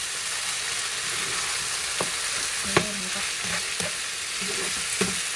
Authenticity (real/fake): real